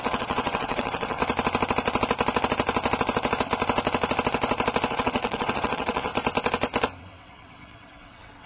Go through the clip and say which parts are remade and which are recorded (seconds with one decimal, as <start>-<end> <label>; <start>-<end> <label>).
0.0-1.2 remade; 1.2-4.9 recorded; 4.9-6.1 remade; 6.1-7.0 recorded; 7.0-8.5 remade